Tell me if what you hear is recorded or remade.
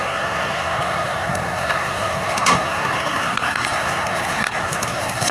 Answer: remade